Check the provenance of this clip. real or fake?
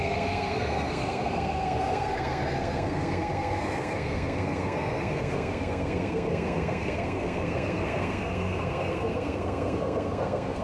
fake